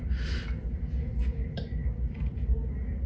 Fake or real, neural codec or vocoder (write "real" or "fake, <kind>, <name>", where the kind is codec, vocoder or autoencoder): fake, vocoder, BigVGAN v2